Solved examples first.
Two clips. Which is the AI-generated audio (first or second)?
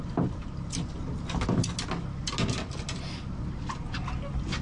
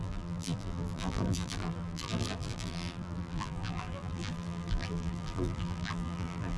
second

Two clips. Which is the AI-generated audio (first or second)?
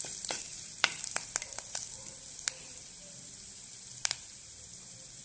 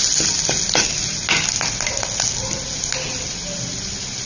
first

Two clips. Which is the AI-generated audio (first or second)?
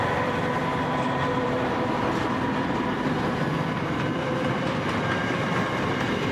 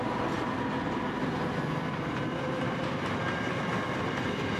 first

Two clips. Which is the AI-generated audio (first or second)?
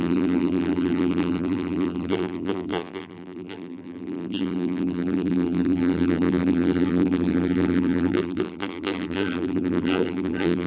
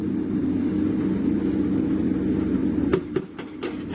first